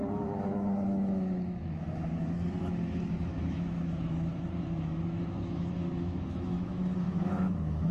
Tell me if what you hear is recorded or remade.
remade